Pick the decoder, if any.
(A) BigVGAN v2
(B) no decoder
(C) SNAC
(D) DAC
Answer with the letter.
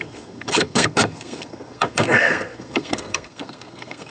C